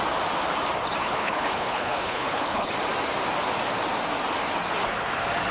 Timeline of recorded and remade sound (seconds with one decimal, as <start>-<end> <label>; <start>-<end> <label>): 0.0-1.0 recorded; 1.0-2.7 remade; 2.7-5.5 recorded